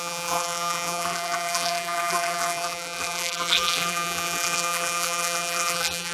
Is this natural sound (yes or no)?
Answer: no